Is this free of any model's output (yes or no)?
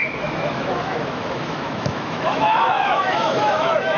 no